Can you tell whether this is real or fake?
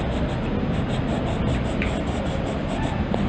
real